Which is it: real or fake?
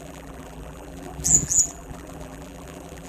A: fake